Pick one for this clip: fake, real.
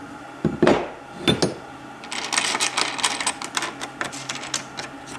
real